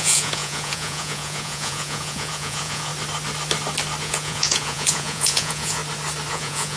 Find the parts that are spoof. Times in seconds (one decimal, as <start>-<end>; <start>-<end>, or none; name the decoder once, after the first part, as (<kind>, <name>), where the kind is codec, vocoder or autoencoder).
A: 0.0-2.9 (vocoder, Vocos); 4.0-5.8; 6.3-6.8